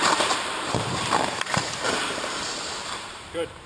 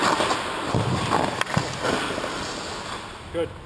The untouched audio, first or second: second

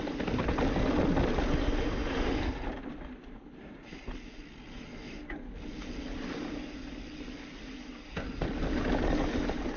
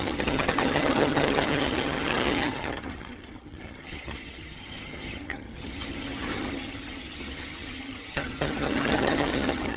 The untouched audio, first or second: first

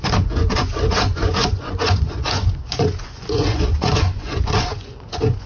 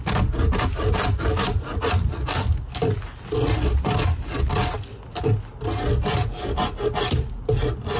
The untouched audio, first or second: second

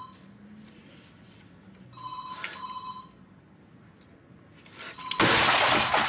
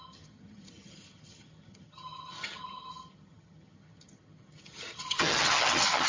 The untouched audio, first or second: first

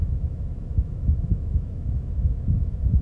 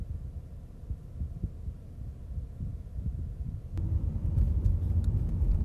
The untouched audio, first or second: second